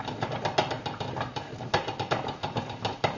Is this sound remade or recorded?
recorded